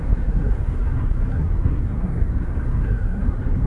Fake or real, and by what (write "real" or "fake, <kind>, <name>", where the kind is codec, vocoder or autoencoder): fake, codec, SNAC